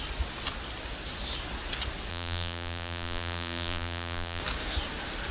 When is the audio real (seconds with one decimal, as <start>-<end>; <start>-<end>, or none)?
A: 0.0-2.1; 4.4-5.3